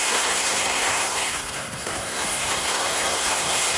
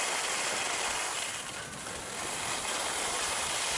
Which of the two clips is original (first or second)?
second